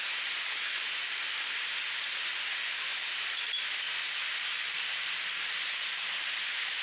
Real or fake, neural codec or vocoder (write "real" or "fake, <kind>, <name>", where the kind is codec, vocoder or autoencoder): real